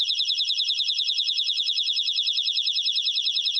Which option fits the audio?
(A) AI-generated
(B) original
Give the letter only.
A